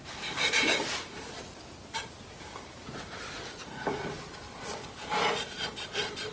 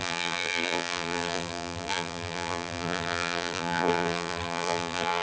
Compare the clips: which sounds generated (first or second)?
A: second